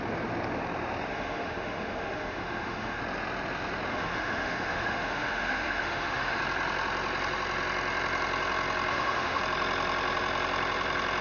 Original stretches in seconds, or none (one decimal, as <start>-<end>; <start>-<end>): 0.0-1.1; 3.0-3.9; 6.4-8.9; 9.4-11.2